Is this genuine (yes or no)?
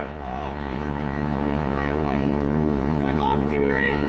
no